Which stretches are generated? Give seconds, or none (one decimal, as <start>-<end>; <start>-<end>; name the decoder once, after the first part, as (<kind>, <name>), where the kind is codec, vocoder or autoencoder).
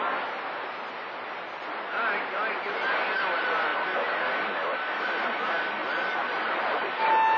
5.8-6.8 (vocoder, BigVGAN v2)